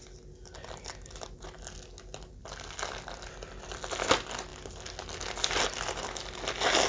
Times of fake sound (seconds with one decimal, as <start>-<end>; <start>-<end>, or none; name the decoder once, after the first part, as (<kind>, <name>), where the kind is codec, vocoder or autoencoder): none

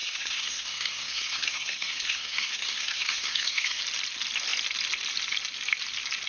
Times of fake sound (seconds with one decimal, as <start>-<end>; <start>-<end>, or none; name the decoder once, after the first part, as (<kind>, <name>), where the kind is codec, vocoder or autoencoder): 0.0-3.8 (codec, SNAC)

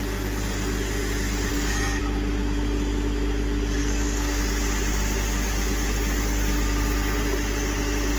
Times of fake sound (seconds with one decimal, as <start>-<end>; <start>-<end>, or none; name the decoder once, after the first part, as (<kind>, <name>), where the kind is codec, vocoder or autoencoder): 1.5-2.0 (codec, SNAC); 3.8-4.4

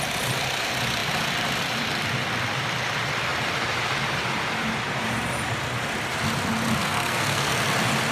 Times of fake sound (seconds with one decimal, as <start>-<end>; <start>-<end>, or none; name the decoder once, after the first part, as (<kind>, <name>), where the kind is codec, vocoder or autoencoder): 6.8-7.6 (codec, SNAC)